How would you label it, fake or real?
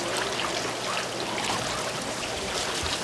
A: real